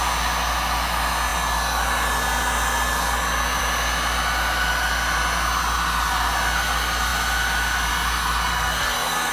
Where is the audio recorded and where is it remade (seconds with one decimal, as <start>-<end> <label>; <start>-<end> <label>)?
0.0-8.5 recorded; 8.5-9.3 remade